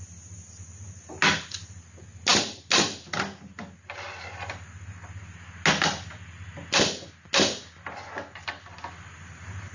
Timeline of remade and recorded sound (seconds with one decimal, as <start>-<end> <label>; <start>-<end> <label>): 0.0-9.7 recorded